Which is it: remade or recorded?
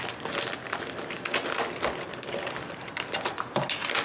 recorded